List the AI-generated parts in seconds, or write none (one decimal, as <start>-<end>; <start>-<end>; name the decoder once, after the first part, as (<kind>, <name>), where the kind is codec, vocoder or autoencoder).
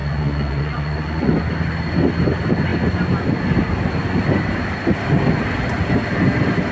0.0-1.3 (vocoder, Vocos)